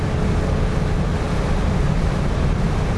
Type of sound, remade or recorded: recorded